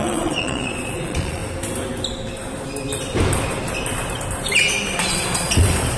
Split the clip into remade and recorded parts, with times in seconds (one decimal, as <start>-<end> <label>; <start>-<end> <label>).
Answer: 0.0-1.4 remade; 1.4-5.0 recorded; 5.0-6.0 remade